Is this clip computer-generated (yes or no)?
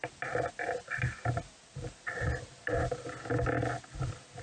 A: no